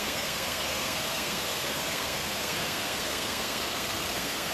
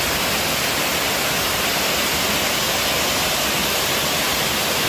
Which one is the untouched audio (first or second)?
second